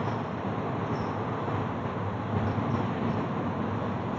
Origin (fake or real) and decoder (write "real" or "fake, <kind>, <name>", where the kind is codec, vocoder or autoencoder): fake, vocoder, BigVGAN v2